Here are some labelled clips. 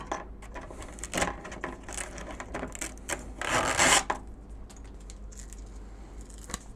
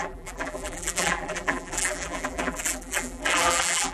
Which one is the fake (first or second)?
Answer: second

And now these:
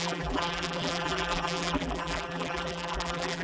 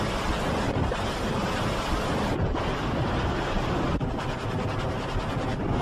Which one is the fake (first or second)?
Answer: first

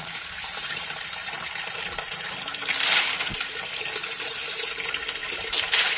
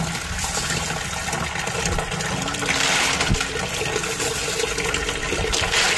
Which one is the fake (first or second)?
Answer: first